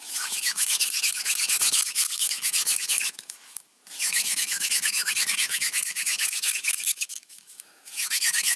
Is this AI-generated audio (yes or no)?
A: yes